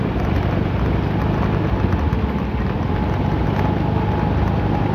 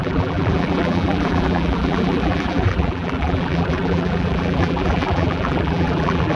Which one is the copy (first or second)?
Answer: second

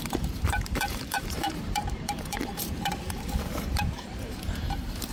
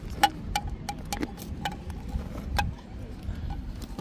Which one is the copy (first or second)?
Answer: first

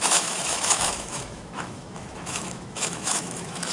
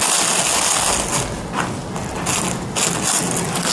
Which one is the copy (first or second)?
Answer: first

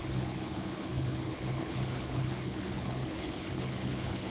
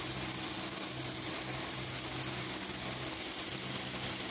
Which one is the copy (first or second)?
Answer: first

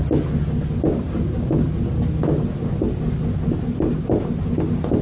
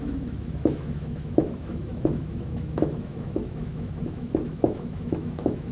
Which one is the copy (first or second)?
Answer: second